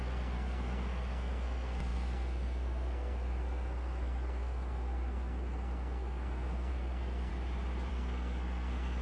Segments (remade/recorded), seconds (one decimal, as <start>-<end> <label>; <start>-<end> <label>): 0.0-7.3 remade; 7.3-7.9 recorded; 7.9-9.0 remade

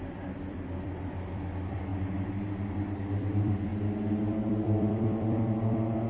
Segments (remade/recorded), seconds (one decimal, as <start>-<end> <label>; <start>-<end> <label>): 0.0-1.9 remade; 1.9-2.7 recorded; 2.7-3.7 remade; 3.7-4.2 recorded; 4.2-6.1 remade

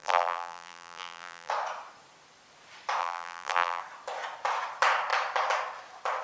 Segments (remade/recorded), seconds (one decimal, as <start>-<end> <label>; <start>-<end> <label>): 0.0-1.5 remade; 1.5-3.0 recorded; 3.0-3.8 remade; 3.8-6.2 recorded

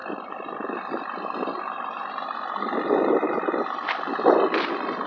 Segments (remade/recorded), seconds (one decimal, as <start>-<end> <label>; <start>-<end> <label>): 0.0-5.1 recorded

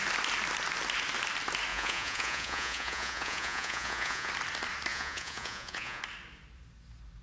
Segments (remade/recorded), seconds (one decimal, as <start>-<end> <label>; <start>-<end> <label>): 0.0-1.7 recorded; 1.7-4.3 remade; 4.3-4.9 recorded; 4.9-6.0 remade; 6.0-7.2 recorded

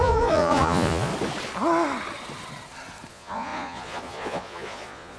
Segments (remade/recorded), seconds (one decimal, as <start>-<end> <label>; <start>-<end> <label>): 0.0-1.1 remade; 1.1-3.1 recorded; 3.1-5.2 remade